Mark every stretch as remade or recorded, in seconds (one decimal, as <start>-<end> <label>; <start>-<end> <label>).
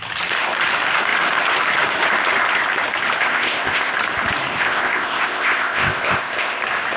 0.0-3.2 recorded; 3.2-3.9 remade; 3.9-4.5 recorded; 4.5-6.6 remade; 6.6-7.0 recorded